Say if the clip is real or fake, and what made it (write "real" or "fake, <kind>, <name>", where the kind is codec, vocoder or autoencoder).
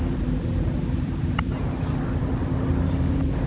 real